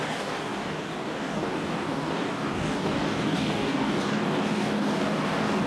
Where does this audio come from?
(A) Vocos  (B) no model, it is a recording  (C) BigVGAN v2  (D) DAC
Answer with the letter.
D